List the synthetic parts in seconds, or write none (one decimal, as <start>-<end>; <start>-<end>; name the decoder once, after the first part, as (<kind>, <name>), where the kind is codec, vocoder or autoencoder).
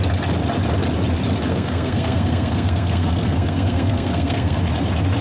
1.5-4.6 (codec, SNAC)